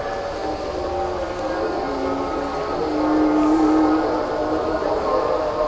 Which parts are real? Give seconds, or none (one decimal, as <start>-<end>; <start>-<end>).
0.0-0.4; 0.9-4.4; 5.3-5.7